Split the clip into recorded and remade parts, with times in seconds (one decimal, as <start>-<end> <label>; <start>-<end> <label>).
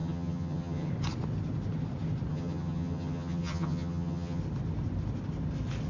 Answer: 0.0-0.9 remade; 0.9-2.3 recorded; 2.3-4.4 remade; 4.4-5.9 recorded